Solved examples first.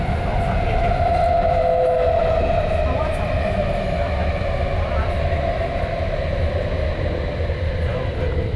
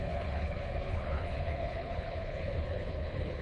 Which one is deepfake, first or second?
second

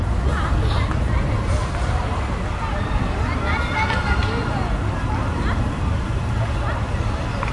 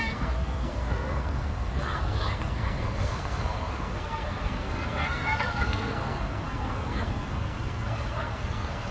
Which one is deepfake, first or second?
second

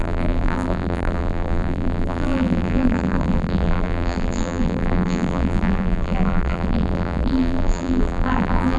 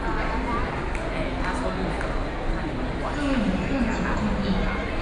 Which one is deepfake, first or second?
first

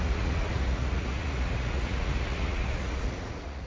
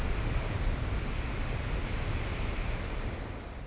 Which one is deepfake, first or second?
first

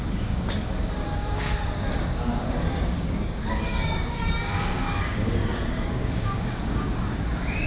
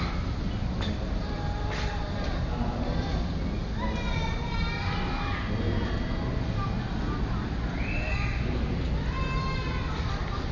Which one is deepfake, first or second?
first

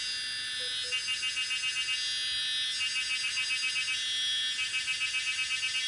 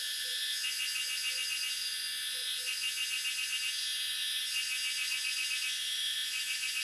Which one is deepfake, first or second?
second